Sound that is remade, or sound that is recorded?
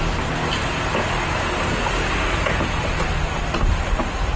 recorded